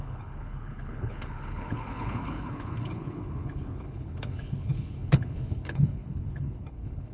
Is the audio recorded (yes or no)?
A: no